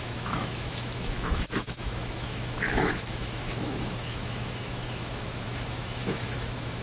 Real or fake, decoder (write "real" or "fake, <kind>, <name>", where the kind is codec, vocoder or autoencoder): fake, autoencoder, DAC-VAE